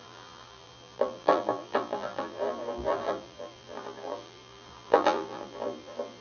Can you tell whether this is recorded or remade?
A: remade